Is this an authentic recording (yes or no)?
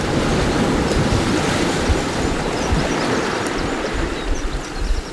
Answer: no